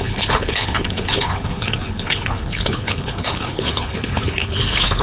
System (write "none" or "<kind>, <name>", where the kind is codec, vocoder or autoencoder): codec, HILCodec